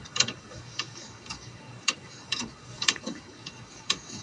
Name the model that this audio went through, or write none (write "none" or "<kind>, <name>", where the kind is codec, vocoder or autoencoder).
codec, DAC